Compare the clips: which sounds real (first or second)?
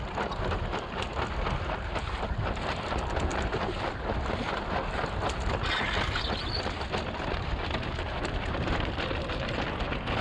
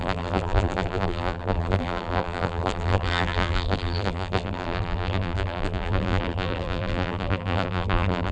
first